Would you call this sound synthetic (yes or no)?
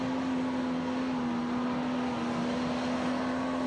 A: no